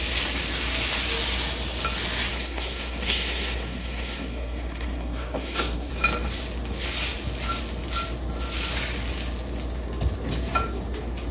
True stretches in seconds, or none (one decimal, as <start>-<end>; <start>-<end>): 0.0-2.3; 5.9-11.3